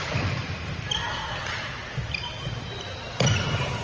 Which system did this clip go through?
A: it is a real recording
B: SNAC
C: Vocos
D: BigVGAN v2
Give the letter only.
A